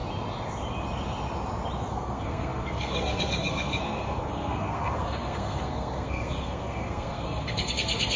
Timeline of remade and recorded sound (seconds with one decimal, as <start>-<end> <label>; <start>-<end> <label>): 0.0-1.9 recorded; 1.9-8.2 remade